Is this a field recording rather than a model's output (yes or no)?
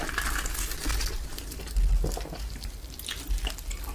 yes